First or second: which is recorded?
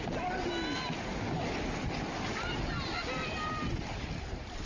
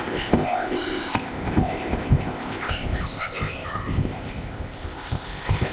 first